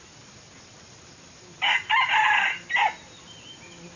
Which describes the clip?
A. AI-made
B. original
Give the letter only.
B